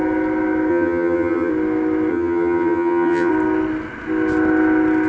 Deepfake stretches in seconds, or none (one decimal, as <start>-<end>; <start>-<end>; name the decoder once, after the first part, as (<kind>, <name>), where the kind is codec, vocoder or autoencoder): 0.7-1.5 (vocoder, HiFi-GAN); 2.1-3.3

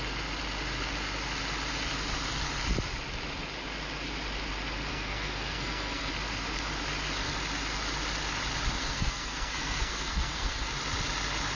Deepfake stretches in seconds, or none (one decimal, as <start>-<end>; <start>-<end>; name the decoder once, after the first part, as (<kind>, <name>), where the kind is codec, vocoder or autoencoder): 4.9-6.1 (codec, SNAC); 8.8-10.7

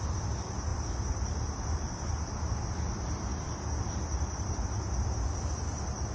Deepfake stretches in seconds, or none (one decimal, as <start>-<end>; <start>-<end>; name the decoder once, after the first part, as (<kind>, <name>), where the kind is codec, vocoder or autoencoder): none

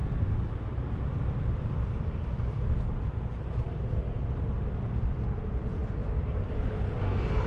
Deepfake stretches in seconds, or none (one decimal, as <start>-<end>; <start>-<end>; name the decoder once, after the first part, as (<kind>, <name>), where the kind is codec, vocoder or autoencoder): none

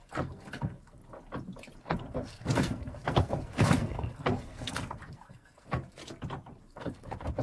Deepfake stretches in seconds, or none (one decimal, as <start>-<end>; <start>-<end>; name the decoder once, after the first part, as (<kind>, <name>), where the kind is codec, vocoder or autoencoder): 0.0-1.0 (codec, SNAC); 1.8-6.0; 6.6-7.4

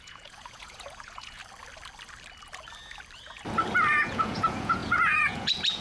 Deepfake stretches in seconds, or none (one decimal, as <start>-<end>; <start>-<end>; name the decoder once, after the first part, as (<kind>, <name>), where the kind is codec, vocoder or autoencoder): 0.0-1.4 (vocoder, Vocos); 3.9-5.8